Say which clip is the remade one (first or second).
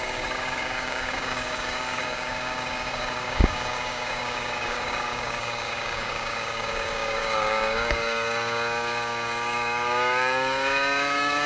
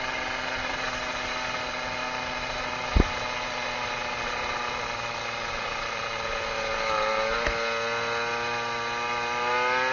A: first